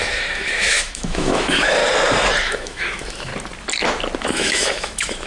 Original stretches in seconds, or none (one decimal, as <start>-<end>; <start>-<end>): 1.8-2.4; 3.3-4.2